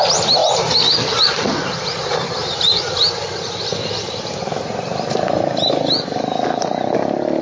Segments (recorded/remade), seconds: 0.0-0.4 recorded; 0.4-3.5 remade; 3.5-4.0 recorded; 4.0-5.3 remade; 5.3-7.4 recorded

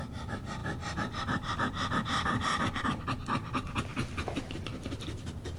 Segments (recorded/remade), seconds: 0.0-3.9 remade; 3.9-5.0 recorded; 5.0-5.6 remade

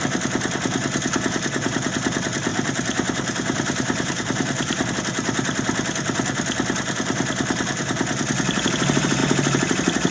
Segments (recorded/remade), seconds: 0.0-2.5 recorded; 2.5-4.9 remade; 4.9-10.1 recorded

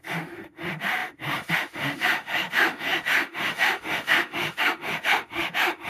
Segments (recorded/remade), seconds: 0.0-5.9 remade

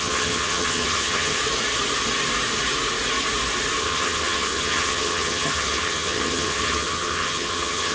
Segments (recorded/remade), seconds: 0.0-1.4 remade; 1.4-3.8 recorded; 3.8-7.9 remade

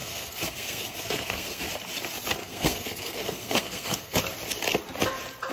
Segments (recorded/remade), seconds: 0.0-1.6 remade; 1.6-2.4 recorded; 2.4-4.2 remade; 4.2-5.5 recorded

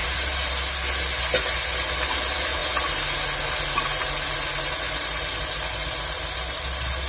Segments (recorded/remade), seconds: 0.0-0.5 remade; 0.5-7.1 recorded

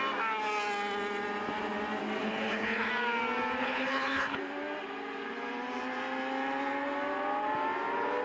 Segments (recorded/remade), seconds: 0.0-2.2 recorded; 2.2-2.9 remade; 2.9-3.6 recorded; 3.6-4.4 remade; 4.4-8.2 recorded